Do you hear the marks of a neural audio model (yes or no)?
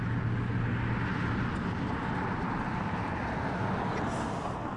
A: no